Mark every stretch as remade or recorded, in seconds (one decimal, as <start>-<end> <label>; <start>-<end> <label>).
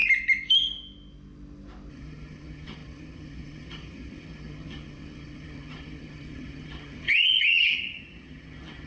0.0-1.9 recorded; 1.9-8.9 remade